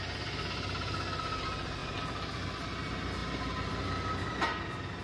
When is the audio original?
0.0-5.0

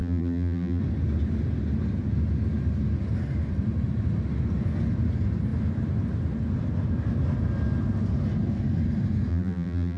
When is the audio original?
0.8-9.3

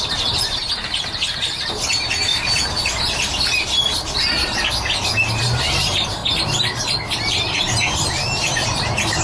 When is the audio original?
2.3-5.4; 6.2-7.2

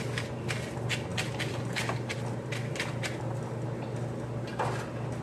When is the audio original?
0.0-5.2

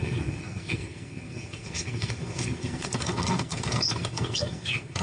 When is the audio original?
none